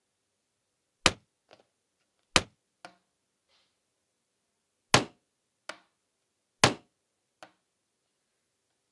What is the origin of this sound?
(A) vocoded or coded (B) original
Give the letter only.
B